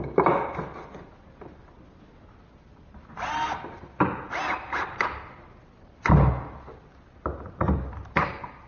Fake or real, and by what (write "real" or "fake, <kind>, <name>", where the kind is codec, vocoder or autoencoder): real